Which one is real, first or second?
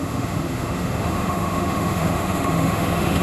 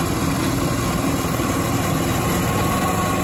second